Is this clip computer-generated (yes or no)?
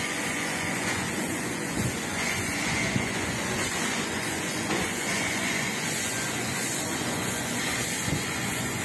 yes